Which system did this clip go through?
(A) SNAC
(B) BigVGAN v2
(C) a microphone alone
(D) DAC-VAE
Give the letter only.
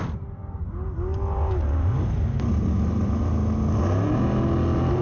C